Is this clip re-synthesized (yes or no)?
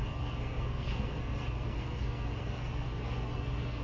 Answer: yes